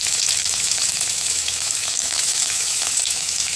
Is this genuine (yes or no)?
no